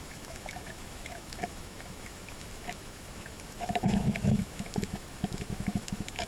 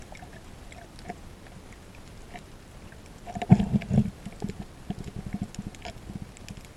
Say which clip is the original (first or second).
second